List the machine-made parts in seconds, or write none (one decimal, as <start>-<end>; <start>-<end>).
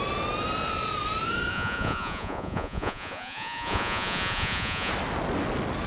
1.5-4.9